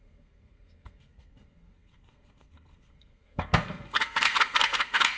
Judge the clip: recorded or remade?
remade